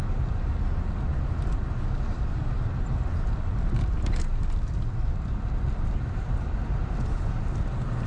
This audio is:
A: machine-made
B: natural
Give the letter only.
B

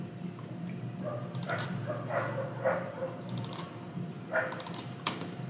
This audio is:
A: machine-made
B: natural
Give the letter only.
A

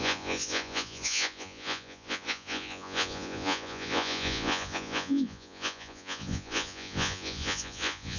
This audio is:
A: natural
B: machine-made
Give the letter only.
B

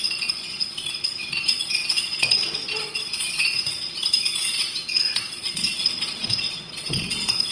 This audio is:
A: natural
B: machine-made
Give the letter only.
B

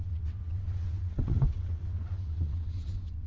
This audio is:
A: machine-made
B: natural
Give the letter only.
A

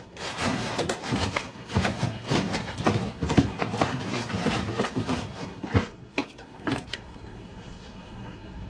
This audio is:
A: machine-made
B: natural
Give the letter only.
A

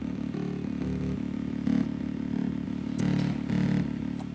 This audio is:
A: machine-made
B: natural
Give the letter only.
B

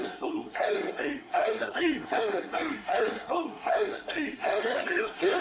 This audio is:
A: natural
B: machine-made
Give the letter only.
B